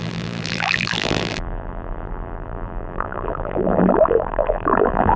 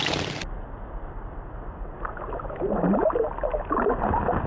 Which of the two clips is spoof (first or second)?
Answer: first